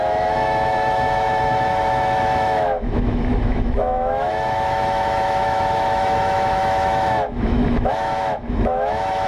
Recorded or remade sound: remade